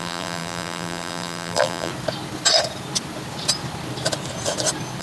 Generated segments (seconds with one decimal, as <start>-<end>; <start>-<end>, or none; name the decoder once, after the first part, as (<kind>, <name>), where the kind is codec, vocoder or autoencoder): 0.0-1.9 (vocoder, BigVGAN v2)